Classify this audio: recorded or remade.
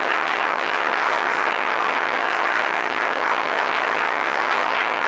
remade